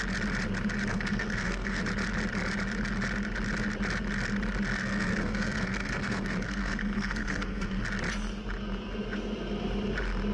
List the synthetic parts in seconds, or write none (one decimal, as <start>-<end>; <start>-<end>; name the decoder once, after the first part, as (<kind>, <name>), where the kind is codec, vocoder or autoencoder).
0.9-1.8 (codec, SNAC); 4.8-7.8